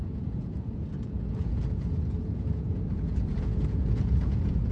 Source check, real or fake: fake